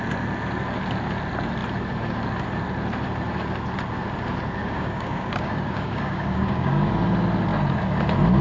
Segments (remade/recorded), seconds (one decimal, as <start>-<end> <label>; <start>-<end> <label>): 0.0-4.6 recorded; 4.6-6.9 remade; 6.9-8.4 recorded